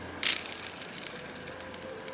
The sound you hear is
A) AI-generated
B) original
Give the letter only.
B